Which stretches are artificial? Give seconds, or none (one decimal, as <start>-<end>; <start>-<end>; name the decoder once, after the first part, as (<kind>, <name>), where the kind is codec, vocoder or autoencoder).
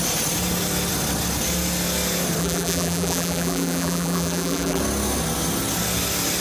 2.4-4.8 (vocoder, BigVGAN v2)